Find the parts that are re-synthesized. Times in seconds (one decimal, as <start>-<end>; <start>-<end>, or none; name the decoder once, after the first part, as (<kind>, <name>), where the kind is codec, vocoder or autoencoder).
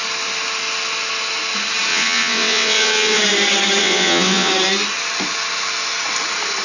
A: 1.9-3.2 (vocoder, WaveNeXt); 3.8-4.5